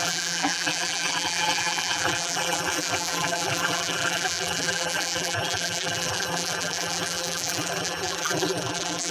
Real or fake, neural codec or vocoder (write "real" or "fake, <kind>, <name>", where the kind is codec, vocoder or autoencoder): fake, vocoder, BigVGAN v2